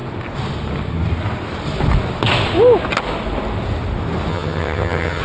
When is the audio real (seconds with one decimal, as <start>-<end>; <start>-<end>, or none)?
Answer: 0.0-4.3